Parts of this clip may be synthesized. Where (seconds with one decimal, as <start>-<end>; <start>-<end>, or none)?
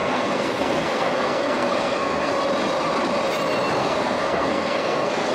0.0-2.3; 3.8-5.3